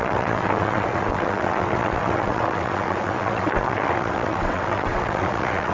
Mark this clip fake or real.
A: fake